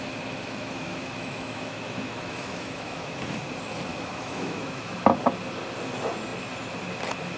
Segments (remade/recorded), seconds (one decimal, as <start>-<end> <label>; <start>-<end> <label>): 0.0-0.4 recorded; 0.4-3.4 remade; 3.4-3.9 recorded; 3.9-5.2 remade; 5.2-7.4 recorded